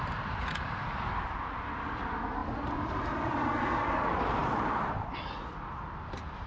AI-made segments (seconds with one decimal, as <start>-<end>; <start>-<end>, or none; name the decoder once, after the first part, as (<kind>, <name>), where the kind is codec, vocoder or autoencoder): none